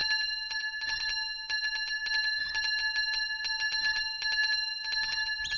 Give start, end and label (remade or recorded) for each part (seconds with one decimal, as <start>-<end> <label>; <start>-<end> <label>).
0.0-5.6 recorded